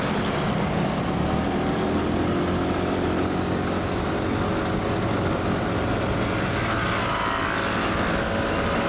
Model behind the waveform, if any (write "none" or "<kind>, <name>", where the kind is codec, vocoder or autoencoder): none